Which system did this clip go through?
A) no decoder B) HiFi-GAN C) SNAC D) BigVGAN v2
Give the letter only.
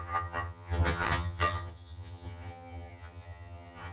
B